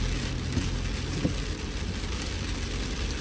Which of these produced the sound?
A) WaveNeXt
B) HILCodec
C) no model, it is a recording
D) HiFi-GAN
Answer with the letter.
C